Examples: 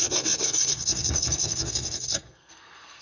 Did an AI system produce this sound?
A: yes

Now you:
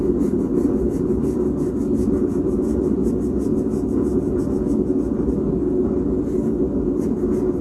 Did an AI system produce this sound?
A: no